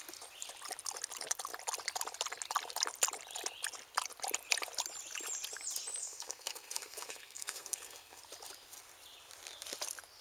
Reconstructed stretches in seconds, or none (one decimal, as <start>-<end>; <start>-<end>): 6.0-8.2